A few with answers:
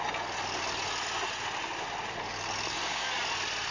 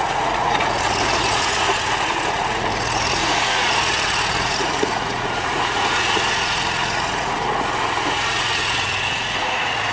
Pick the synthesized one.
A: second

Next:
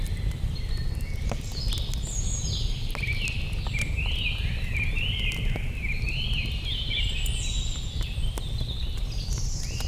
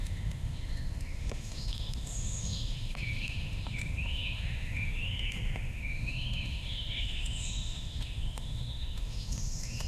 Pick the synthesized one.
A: second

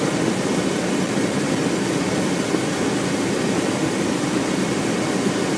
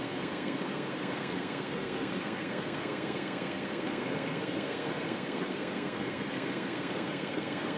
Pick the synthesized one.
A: second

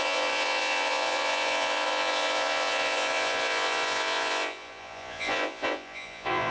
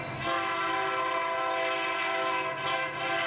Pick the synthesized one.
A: first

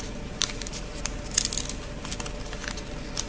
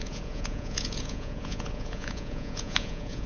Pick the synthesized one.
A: second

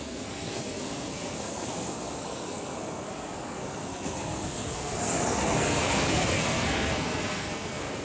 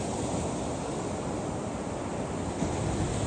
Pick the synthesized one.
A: first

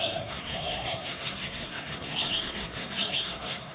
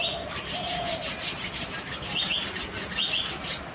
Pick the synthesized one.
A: first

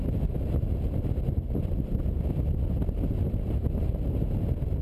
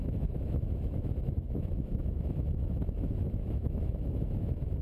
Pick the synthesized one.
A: second